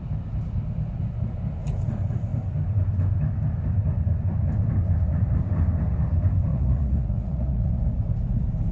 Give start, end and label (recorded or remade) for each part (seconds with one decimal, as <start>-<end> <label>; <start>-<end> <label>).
0.0-6.5 recorded; 6.5-7.7 remade; 7.7-8.7 recorded